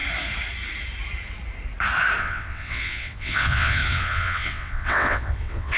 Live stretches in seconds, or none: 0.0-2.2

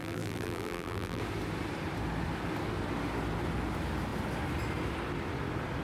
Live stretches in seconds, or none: 1.2-5.8

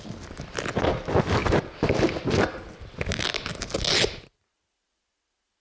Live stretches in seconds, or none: 0.0-5.6